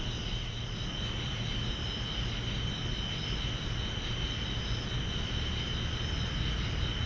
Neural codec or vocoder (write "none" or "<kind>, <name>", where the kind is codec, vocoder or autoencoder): none